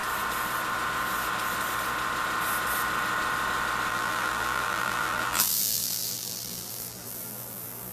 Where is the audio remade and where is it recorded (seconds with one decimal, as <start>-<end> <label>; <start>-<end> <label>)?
0.0-3.9 recorded; 3.9-7.9 remade